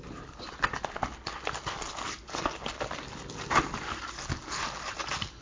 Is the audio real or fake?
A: real